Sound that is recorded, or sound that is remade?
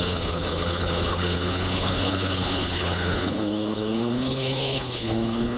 remade